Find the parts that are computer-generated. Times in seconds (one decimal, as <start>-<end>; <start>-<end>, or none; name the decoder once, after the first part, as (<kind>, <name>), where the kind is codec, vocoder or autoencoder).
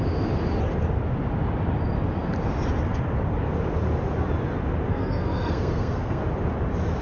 4.9-6.2 (codec, SNAC)